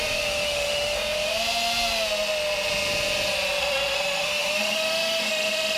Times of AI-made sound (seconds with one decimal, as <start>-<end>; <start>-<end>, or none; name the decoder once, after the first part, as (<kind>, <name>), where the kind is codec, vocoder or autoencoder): 0.0-1.3 (autoencoder, DAC-VAE); 3.6-5.8

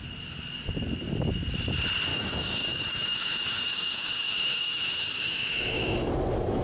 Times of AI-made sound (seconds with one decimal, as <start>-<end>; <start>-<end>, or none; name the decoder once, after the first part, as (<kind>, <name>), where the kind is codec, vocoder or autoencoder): 2.1-6.1 (autoencoder, DAC-VAE)